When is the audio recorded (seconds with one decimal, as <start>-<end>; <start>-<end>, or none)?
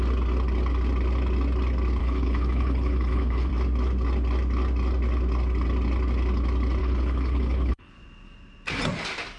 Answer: 0.0-2.0; 3.5-6.8; 7.9-9.4